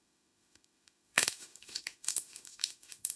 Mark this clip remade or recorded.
remade